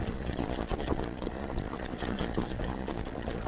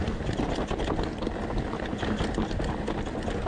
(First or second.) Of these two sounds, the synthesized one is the first